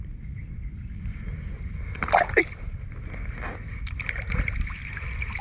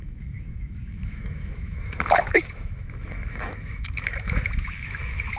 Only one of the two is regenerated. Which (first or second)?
second